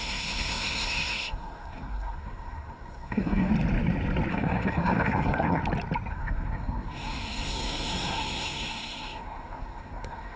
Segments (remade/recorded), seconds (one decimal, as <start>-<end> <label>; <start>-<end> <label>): 0.0-3.5 remade; 3.5-4.3 recorded; 4.3-5.6 remade; 5.6-6.1 recorded; 6.1-10.4 remade